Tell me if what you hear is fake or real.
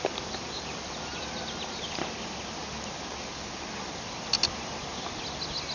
real